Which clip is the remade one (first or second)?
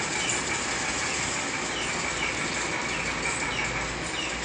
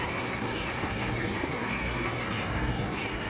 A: second